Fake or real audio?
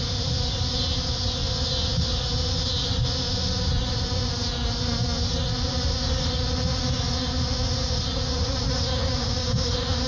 real